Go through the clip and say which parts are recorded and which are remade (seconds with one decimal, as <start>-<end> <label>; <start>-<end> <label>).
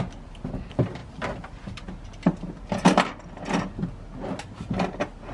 0.0-5.3 recorded